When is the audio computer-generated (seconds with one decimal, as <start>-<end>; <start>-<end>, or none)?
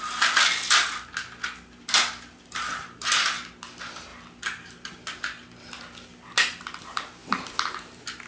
none